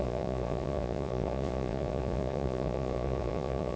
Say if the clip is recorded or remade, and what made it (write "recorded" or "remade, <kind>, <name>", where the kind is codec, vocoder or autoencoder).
remade, vocoder, Vocos